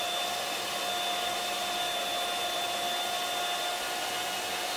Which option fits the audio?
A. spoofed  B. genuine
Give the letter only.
B